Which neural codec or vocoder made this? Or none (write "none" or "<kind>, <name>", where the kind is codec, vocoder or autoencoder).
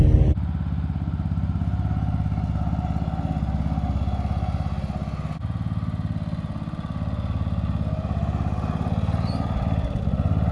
none